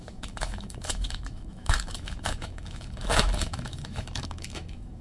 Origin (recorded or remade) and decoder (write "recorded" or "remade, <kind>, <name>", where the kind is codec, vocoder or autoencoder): remade, autoencoder, DAC-VAE